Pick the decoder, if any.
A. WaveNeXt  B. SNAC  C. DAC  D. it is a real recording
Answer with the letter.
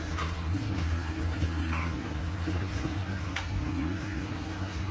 B